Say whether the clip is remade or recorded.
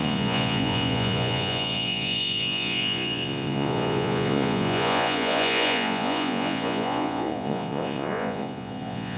remade